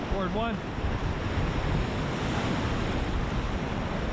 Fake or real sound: real